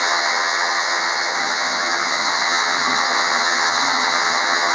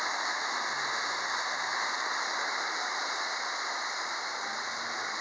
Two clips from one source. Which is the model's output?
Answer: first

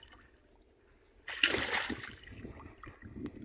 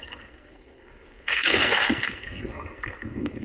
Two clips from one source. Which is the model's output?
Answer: second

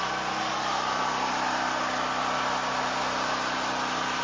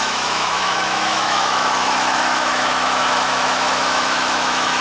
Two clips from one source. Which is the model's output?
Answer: second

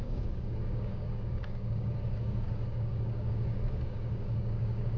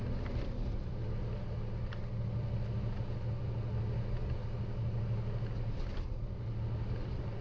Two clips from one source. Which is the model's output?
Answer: first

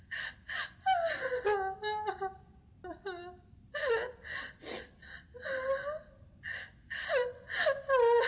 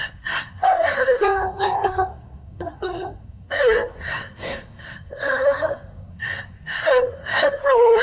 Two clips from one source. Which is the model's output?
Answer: second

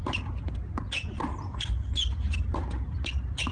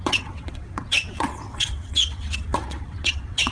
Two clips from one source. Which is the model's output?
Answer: second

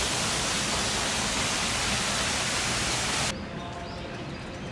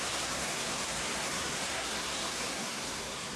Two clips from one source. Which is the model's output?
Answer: second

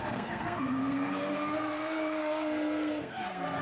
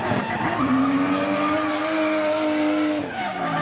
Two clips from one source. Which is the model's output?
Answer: first